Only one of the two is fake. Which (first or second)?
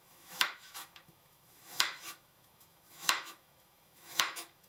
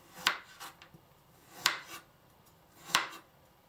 first